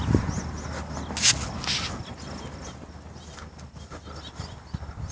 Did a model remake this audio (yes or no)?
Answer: no